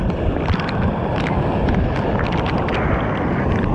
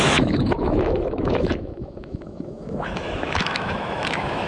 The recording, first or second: first